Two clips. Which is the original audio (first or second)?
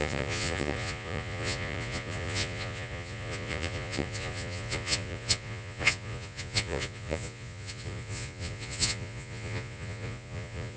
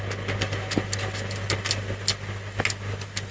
second